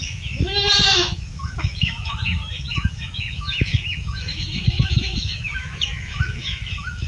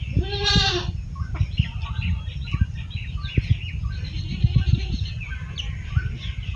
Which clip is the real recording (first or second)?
second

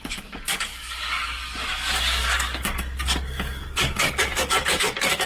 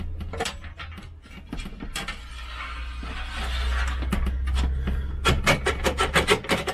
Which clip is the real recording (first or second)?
second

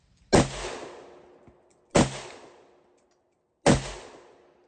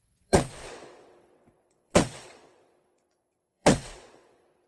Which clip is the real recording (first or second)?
first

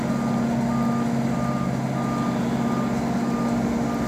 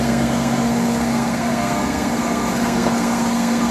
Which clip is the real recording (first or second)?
first